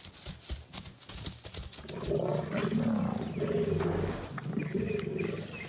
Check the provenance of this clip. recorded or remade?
recorded